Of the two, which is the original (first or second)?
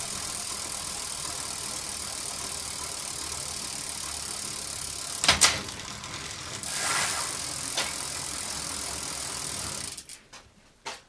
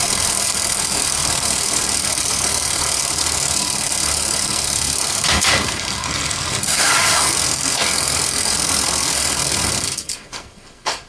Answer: first